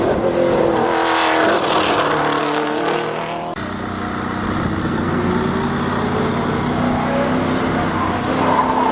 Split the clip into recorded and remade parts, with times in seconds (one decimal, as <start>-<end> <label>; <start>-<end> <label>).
0.0-2.4 recorded; 2.4-3.2 remade; 3.2-4.8 recorded; 4.8-5.3 remade; 5.3-8.9 recorded